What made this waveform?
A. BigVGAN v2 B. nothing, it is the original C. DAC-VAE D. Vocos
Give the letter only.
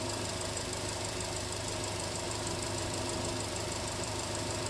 A